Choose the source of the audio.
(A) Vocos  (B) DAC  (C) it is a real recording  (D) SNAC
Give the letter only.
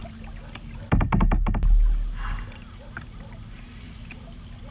C